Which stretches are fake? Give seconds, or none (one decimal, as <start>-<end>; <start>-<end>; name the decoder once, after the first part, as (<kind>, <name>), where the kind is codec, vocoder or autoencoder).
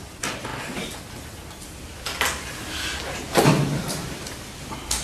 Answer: 0.0-0.5 (vocoder, BigVGAN v2); 1.1-2.1; 3.9-5.0